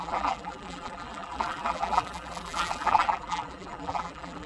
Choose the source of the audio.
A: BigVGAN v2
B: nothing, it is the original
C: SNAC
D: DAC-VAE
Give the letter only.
A